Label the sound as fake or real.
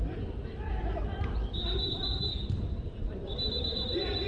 fake